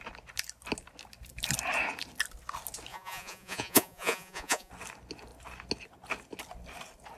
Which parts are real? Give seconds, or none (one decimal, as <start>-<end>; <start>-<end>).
0.0-2.9; 4.7-7.2